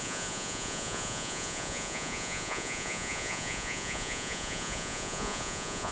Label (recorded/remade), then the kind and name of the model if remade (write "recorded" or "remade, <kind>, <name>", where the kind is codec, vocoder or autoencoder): remade, vocoder, Vocos